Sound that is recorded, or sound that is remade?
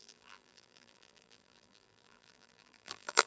remade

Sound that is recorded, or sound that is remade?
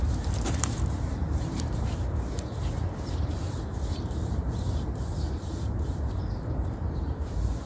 remade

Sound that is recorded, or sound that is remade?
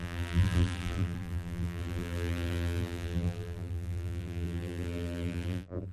remade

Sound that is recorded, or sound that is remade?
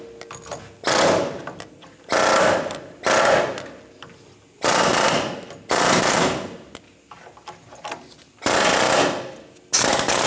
recorded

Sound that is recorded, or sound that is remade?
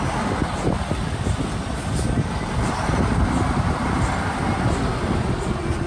remade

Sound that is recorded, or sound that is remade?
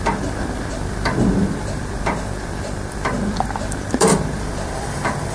remade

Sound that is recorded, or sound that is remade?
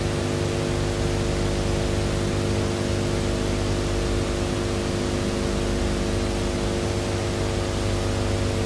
recorded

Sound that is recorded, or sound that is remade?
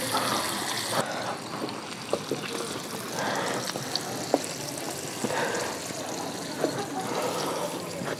recorded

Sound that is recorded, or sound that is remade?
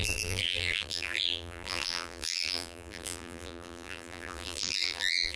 remade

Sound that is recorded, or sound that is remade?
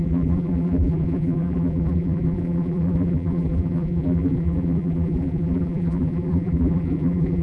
remade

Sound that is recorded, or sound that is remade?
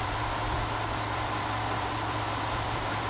remade